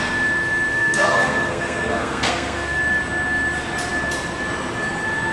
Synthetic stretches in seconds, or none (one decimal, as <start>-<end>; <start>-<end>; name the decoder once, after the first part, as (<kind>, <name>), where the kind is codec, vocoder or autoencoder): 0.7-2.8 (codec, SNAC)